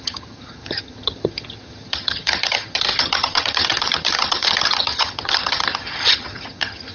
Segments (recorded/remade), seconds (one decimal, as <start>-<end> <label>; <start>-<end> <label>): 0.0-6.9 remade

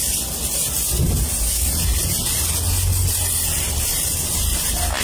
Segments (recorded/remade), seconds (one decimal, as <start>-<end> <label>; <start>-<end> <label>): 0.0-5.0 recorded